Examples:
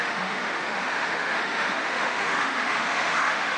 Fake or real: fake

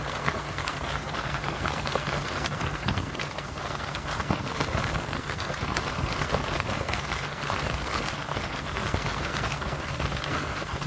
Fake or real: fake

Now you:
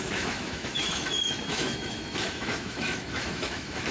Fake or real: fake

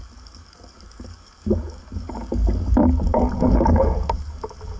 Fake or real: fake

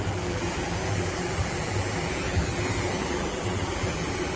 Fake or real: fake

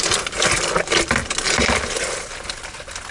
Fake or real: real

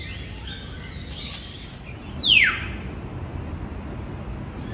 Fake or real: real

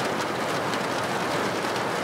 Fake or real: real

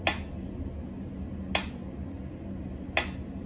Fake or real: real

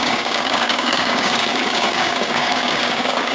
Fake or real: fake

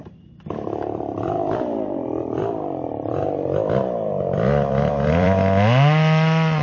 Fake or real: fake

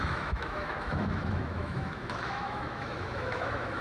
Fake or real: fake